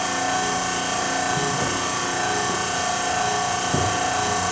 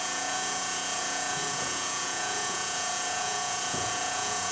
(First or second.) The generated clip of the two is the second